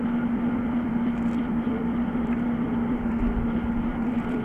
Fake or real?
fake